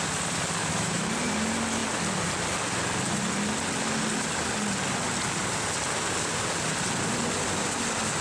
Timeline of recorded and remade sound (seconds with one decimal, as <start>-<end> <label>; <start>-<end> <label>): 0.0-0.6 recorded; 0.6-1.1 remade; 1.1-8.2 recorded